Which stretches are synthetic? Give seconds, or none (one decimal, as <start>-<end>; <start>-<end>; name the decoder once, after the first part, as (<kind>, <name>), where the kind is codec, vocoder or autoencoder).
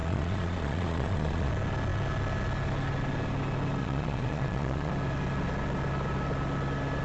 0.0-1.5 (vocoder, Vocos); 3.8-4.9